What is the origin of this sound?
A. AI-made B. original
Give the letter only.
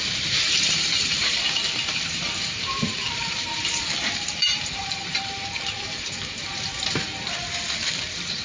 A